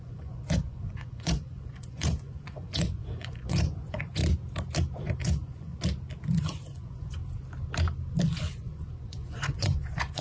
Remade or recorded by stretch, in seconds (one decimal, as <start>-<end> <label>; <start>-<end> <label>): 0.0-4.2 remade; 4.2-5.0 recorded; 5.0-5.7 remade; 5.7-6.4 recorded; 6.4-7.2 remade; 7.2-8.3 recorded; 8.3-10.2 remade